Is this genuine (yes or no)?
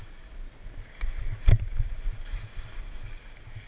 yes